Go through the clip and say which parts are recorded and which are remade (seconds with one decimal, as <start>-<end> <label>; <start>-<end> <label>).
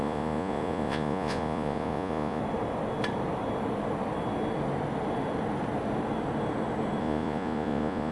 0.0-2.4 remade; 2.4-7.0 recorded; 7.0-8.1 remade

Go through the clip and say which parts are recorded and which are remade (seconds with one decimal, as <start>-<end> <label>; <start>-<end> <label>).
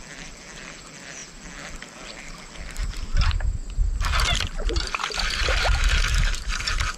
0.0-7.0 recorded